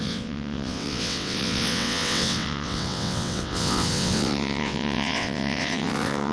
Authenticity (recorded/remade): remade